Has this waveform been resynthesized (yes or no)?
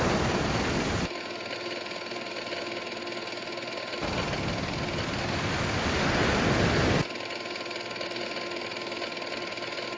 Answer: no